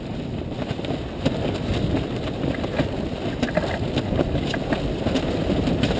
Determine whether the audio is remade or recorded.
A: recorded